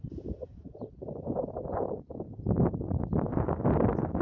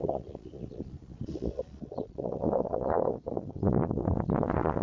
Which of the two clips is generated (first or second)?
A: second